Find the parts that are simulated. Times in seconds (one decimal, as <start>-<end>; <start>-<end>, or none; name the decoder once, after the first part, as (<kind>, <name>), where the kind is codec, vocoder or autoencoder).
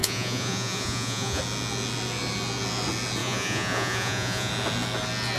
0.0-1.4 (vocoder, Vocos); 3.2-4.5